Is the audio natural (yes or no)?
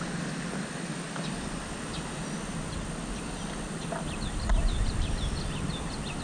yes